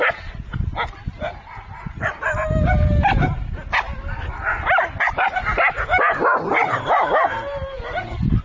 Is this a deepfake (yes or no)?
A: no